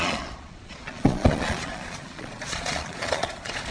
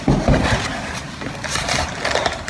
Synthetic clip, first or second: first